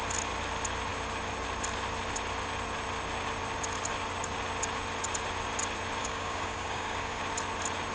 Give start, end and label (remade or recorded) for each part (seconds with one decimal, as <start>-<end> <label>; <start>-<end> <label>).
0.0-6.0 recorded; 6.0-7.2 remade; 7.2-7.9 recorded